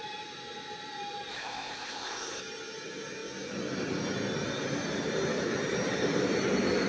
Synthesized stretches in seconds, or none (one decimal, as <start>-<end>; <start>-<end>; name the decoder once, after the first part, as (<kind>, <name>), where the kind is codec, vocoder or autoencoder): 1.3-2.4 (codec, ZipCodec)